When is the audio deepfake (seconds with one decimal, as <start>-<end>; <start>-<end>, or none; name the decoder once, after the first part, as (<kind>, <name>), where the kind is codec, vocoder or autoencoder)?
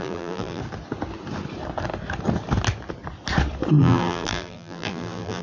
0.0-0.6 (vocoder, BigVGAN v2); 3.8-5.4